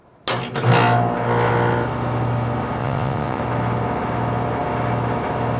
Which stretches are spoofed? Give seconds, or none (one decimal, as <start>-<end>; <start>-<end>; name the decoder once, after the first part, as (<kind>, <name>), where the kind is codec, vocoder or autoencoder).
2.8-3.4 (vocoder, Vocos)